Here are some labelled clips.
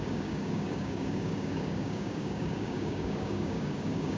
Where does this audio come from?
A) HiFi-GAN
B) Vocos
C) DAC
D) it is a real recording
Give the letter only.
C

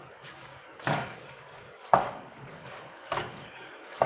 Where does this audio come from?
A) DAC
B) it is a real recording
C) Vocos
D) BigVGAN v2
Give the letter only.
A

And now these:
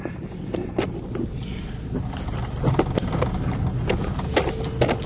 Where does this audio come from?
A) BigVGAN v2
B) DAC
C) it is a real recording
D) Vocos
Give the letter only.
C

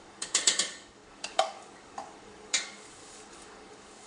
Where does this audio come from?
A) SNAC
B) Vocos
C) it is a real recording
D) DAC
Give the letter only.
D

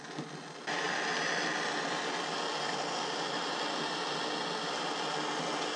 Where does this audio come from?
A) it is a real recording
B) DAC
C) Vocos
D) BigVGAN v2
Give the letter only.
A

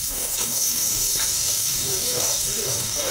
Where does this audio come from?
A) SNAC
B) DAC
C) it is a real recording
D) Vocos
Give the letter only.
B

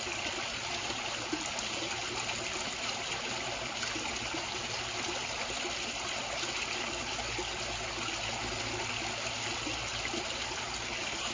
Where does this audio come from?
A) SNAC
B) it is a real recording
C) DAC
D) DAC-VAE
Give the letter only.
B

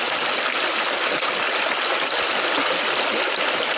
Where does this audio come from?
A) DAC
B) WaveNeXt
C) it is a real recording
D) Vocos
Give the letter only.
C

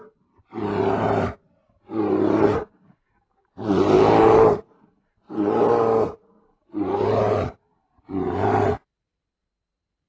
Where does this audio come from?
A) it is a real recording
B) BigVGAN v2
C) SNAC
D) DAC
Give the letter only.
A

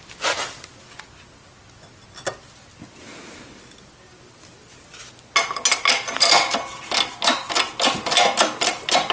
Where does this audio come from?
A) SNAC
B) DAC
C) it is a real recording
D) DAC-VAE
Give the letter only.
C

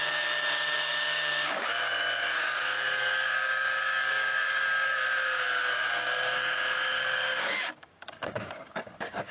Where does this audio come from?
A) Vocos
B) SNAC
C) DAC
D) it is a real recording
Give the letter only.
C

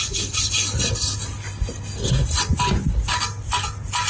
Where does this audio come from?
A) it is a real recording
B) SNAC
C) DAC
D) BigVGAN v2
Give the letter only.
A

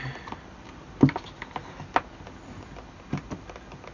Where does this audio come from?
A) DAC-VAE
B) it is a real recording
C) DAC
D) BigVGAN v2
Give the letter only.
B